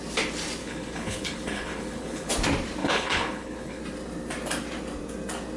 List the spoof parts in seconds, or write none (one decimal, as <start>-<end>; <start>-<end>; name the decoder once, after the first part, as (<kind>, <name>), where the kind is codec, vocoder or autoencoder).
0.6-2.3 (codec, HILCodec); 2.8-3.8